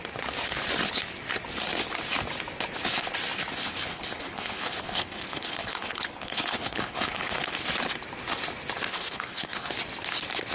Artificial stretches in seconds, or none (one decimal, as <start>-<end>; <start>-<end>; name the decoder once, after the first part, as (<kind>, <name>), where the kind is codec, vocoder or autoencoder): 3.6-7.5 (codec, HILCodec); 8.9-9.7

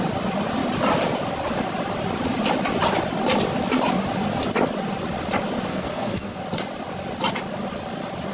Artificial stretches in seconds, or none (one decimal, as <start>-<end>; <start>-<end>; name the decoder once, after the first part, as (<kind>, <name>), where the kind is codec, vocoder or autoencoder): 5.7-6.4 (codec, SNAC)

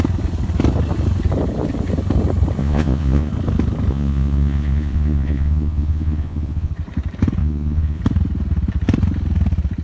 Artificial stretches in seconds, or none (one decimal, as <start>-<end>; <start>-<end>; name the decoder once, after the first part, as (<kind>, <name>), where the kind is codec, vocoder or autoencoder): 2.6-3.3 (vocoder, Vocos); 3.9-6.7; 7.4-8.0

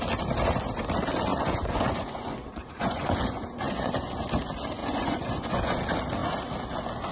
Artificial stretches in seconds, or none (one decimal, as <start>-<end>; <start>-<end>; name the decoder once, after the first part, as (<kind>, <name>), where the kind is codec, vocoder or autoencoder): 1.3-3.9 (vocoder, Vocos); 4.8-5.8

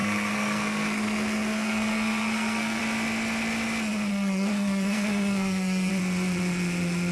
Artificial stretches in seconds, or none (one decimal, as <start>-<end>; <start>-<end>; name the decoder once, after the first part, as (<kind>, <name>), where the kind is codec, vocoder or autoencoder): 0.0-2.8 (codec, SNAC); 4.1-5.9

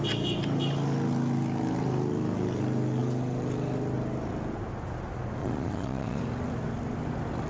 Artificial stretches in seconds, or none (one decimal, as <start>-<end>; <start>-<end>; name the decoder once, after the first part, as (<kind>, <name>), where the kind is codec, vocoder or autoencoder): 5.4-6.2 (vocoder, Vocos)

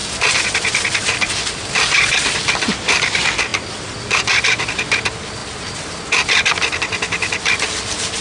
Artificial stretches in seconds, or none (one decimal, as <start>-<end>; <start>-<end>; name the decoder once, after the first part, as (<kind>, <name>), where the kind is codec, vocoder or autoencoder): none